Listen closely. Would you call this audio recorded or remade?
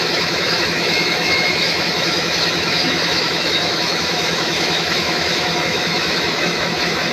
remade